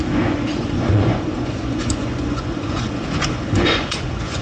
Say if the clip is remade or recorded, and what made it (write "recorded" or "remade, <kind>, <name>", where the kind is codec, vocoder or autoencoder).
remade, vocoder, Vocos